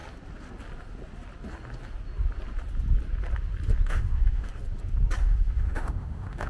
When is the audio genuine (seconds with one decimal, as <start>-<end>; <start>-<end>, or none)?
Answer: 0.0-3.9; 4.5-5.2